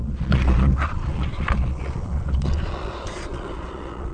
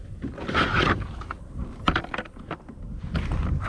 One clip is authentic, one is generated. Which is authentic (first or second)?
second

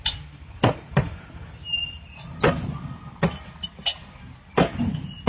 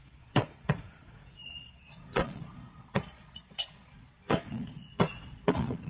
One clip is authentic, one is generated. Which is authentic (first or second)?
first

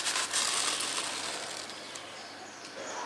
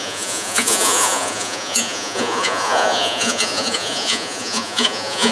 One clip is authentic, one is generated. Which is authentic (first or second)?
first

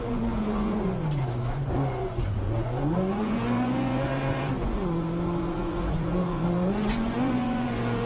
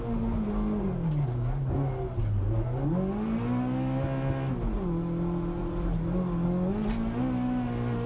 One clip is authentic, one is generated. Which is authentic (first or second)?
second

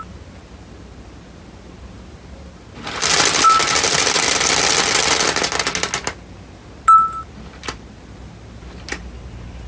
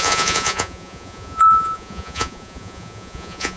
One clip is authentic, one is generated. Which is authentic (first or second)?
first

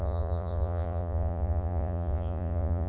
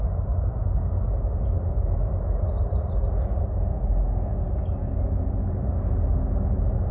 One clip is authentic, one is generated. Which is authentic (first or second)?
second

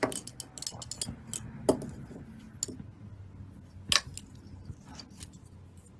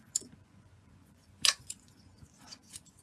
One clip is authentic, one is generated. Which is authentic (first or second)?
first